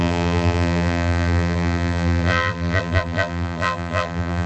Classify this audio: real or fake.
fake